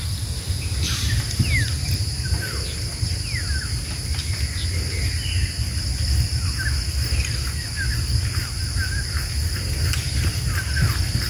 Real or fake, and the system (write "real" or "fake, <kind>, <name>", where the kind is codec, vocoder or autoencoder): real